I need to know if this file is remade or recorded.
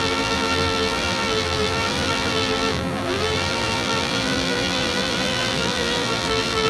remade